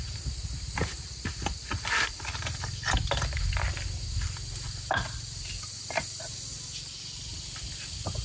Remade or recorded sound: recorded